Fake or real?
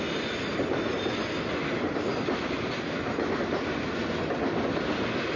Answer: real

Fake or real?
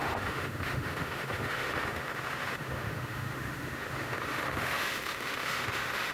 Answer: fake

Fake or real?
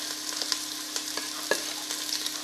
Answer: real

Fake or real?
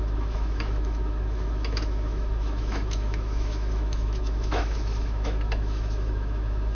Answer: fake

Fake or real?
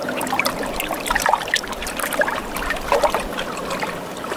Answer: real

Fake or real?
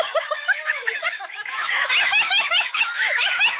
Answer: fake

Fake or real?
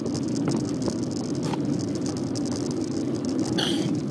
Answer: real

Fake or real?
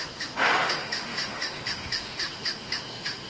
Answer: fake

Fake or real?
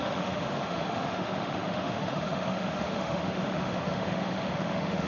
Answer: fake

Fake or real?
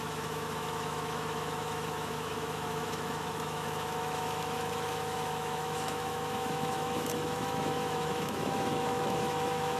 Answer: fake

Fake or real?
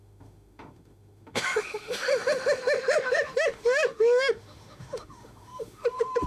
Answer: fake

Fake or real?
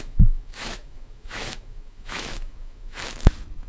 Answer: fake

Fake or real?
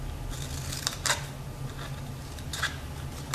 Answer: real